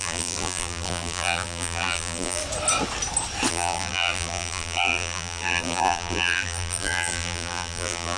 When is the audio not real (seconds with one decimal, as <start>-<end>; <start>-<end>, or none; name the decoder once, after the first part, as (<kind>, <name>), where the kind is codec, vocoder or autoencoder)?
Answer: 0.0-2.4 (vocoder, BigVGAN v2); 3.5-8.2